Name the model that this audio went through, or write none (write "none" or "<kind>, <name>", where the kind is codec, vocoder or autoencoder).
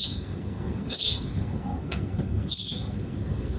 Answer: codec, SNAC